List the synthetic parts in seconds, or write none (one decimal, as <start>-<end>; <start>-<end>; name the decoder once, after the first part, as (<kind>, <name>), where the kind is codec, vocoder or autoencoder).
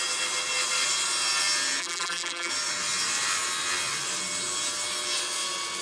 1.8-2.5 (vocoder, BigVGAN v2)